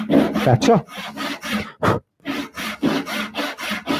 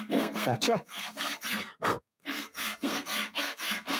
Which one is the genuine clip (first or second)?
first